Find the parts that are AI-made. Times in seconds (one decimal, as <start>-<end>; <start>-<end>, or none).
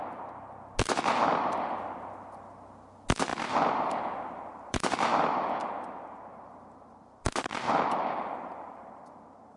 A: 3.3-5.1; 6.3-8.9